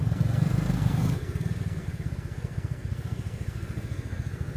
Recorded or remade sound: remade